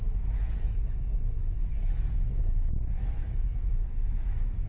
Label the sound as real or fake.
fake